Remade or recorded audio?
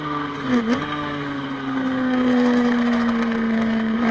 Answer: remade